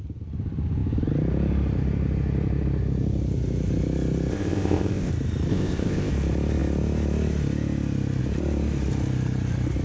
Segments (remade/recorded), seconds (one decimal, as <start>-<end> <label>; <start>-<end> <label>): 0.0-4.3 recorded; 4.3-5.1 remade; 5.1-5.5 recorded; 5.5-6.1 remade; 6.1-9.8 recorded